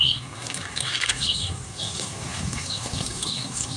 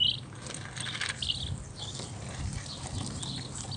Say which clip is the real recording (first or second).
second